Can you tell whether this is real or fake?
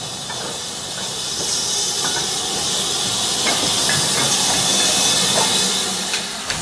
real